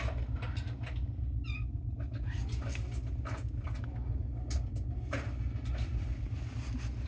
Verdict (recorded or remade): recorded